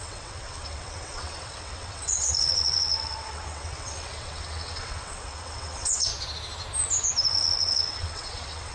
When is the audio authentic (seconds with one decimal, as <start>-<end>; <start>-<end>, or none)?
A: 6.1-7.3